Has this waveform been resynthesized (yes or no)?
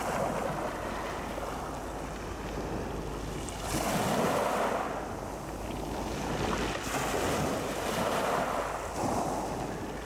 no